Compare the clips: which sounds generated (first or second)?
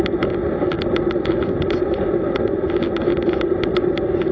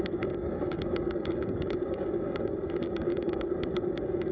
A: second